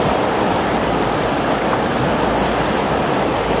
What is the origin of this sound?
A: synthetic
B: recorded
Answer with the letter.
B